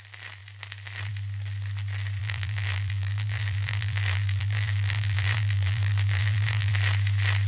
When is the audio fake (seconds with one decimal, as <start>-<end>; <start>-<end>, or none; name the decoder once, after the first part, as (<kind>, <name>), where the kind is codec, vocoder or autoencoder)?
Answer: 2.2-6.7 (vocoder, BigVGAN v2)